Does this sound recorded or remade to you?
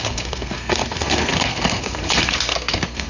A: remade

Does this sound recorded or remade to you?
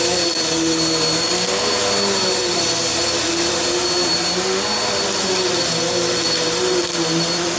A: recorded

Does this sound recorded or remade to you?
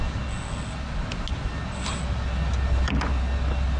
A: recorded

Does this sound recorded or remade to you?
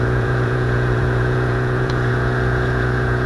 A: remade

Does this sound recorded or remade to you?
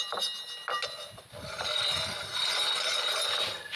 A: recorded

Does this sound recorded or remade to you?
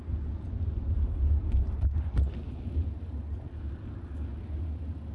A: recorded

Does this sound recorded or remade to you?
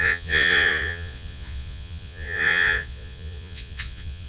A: remade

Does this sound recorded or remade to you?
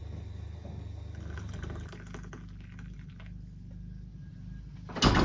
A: recorded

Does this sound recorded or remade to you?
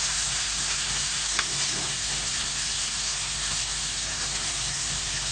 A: remade